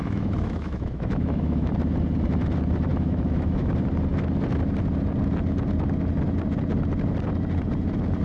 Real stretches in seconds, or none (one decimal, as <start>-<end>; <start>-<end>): 1.7-2.9; 3.7-8.2